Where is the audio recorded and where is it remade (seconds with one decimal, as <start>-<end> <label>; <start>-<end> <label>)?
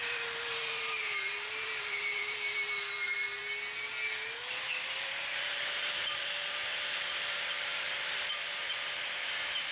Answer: 0.0-3.4 remade; 3.4-5.0 recorded; 5.0-9.7 remade